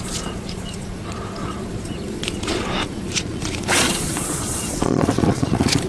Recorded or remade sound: remade